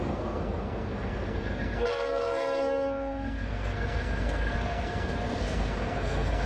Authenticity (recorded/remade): remade